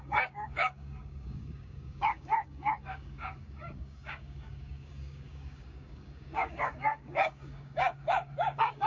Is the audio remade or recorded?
remade